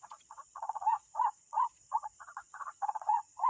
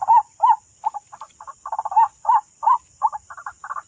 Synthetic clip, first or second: first